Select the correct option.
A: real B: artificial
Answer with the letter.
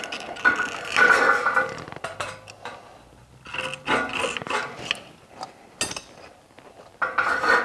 A